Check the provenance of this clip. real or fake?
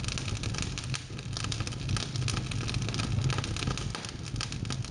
real